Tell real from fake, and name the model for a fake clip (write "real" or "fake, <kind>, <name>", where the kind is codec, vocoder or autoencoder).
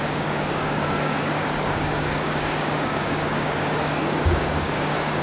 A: fake, codec, DAC